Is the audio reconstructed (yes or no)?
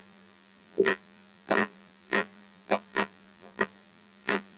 yes